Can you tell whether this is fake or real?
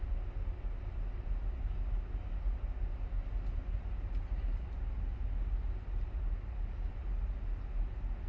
real